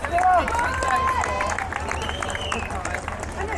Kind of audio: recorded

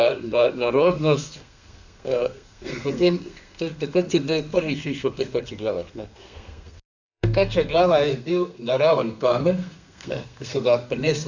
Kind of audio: remade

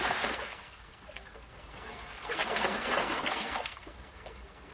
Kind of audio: remade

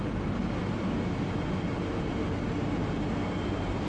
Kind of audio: recorded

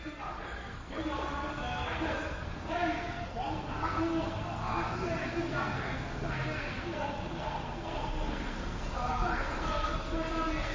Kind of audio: remade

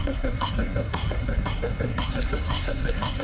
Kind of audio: remade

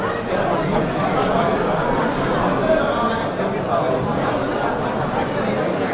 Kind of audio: recorded